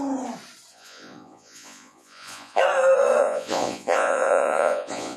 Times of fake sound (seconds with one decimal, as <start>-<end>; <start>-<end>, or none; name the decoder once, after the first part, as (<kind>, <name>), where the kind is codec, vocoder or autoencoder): 0.7-2.6 (vocoder, Vocos); 3.2-5.2